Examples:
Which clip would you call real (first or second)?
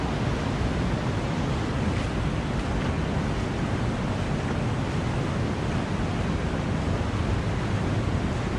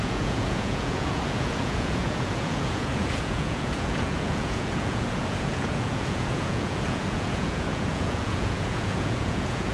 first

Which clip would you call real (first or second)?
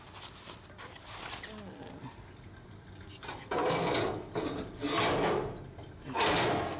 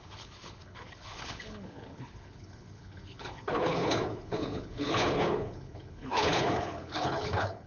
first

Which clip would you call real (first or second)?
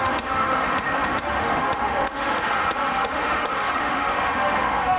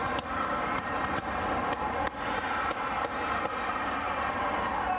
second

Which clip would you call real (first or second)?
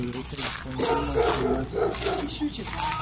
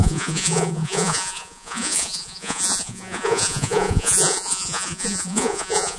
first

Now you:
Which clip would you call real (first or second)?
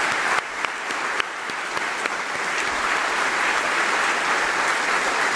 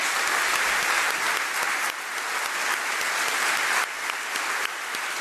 second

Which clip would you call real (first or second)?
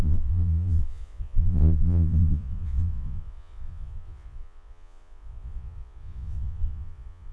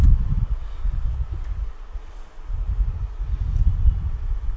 second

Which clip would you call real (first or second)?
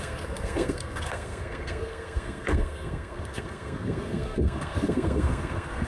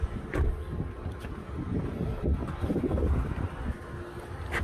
second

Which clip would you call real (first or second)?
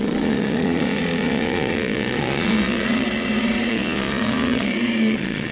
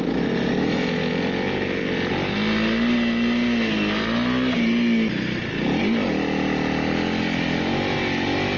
second